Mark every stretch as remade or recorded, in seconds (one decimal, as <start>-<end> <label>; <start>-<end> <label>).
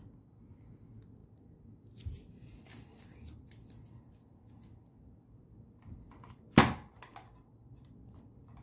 0.0-8.6 recorded